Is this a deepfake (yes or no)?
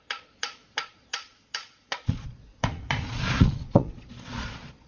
yes